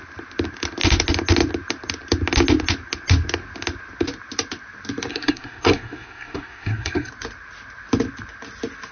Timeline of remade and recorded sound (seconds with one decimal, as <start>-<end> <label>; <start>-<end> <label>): 0.0-5.1 recorded; 5.1-7.1 remade; 7.1-8.9 recorded